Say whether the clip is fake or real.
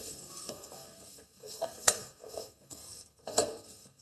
fake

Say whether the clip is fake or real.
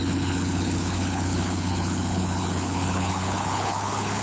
fake